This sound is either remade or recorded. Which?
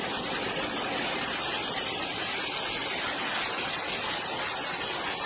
recorded